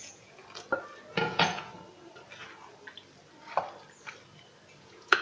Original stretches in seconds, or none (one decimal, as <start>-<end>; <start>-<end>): 0.4-1.1; 1.7-4.8